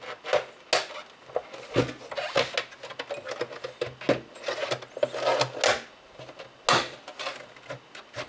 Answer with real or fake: real